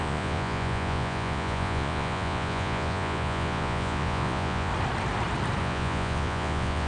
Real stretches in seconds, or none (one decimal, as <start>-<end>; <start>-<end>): 4.7-5.6